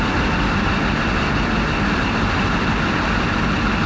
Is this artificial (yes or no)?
no